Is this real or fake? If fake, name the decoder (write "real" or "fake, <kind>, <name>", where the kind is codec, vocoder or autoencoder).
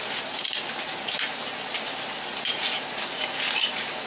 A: fake, vocoder, BigVGAN v2